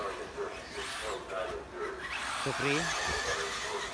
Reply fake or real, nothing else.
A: real